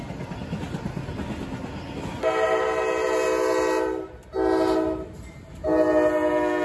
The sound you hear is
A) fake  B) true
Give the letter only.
B